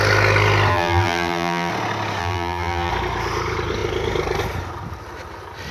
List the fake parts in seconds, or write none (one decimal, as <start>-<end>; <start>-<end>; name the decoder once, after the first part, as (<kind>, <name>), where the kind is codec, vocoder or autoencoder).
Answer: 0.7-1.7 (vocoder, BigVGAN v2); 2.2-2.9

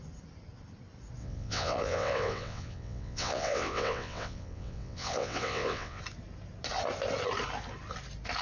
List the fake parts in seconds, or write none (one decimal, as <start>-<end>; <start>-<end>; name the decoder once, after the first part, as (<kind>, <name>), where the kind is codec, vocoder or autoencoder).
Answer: 1.2-6.0 (vocoder, WaveNeXt)

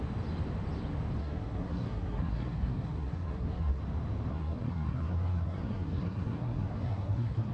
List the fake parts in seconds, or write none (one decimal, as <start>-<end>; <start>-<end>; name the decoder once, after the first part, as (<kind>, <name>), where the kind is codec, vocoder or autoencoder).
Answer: 1.2-3.8 (codec, SNAC); 4.3-7.5

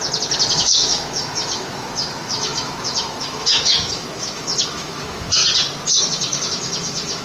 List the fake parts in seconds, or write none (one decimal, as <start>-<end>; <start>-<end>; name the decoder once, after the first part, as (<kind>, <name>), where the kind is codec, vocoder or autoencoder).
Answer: 0.5-5.4 (autoencoder, DAC-VAE); 6.0-7.2

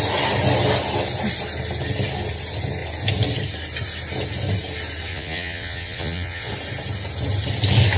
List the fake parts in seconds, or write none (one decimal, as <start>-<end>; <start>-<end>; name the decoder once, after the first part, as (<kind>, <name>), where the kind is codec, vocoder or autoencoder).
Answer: 5.1-6.5 (vocoder, Vocos)